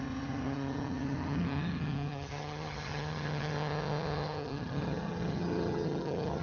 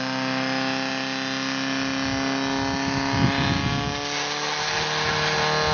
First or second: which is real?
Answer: second